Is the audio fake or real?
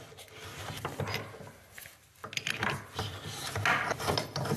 real